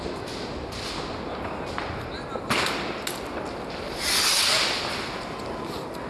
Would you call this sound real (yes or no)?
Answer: yes